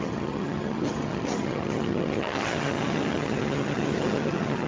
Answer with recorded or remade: remade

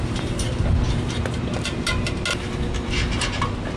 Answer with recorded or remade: recorded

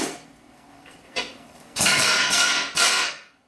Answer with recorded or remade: remade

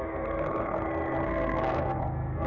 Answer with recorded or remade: remade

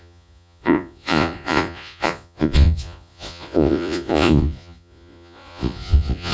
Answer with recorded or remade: remade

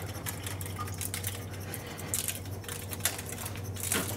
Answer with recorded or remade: recorded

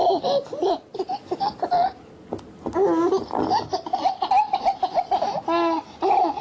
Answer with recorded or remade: recorded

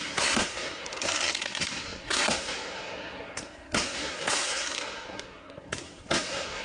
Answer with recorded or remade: remade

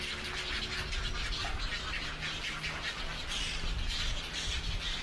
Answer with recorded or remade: recorded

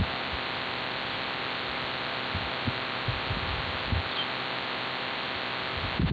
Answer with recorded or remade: recorded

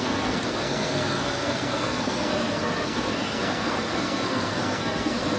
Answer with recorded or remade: remade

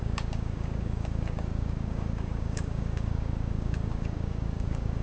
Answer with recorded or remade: remade